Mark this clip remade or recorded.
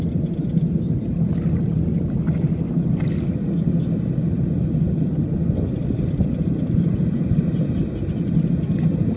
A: recorded